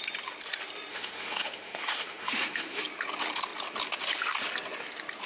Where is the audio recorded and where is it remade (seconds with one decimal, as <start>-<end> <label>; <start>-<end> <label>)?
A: 0.0-0.9 recorded; 0.9-2.8 remade; 2.8-5.3 recorded